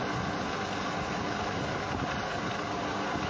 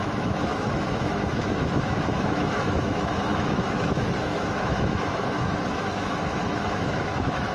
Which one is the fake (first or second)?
second